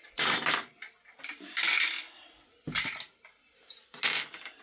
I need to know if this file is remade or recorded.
recorded